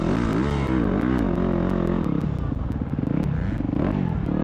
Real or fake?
real